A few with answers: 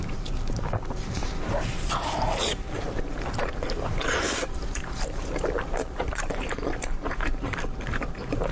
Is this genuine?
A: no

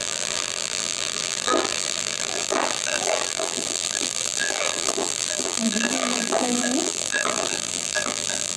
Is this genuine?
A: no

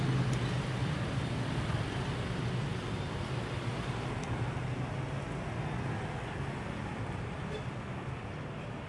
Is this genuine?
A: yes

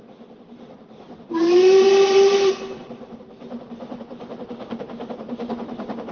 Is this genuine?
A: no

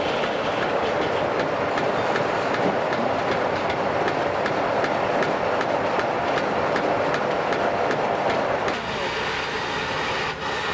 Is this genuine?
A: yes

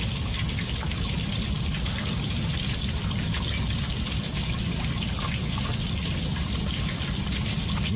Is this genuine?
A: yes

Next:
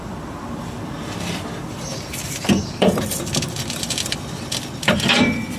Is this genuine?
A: no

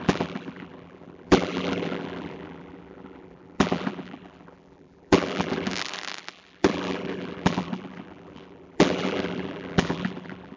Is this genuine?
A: no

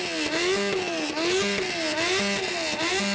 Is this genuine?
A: yes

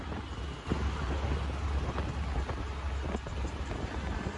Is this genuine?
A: yes